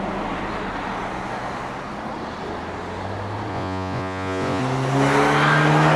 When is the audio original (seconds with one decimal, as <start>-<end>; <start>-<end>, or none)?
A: 0.0-3.5; 4.6-6.0